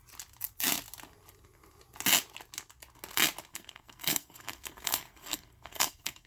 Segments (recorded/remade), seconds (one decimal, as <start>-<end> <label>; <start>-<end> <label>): 0.0-3.5 recorded; 3.5-6.3 remade